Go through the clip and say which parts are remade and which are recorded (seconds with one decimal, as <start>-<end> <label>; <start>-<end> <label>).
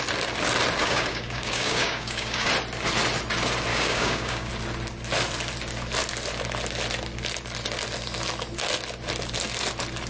0.0-0.8 recorded; 0.8-2.5 remade; 2.5-3.7 recorded; 3.7-4.5 remade; 4.5-10.1 recorded